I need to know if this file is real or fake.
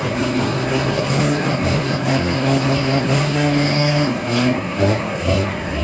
fake